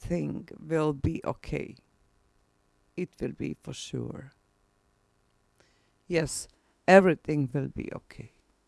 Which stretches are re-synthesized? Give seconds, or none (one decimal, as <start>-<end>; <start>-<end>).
6.4-7.0; 7.5-8.7